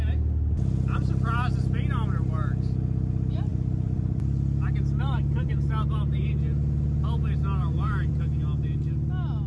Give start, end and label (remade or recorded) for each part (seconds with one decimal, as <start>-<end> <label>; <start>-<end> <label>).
0.0-3.5 recorded; 3.5-5.7 remade; 5.7-7.6 recorded; 7.6-8.1 remade; 8.1-9.5 recorded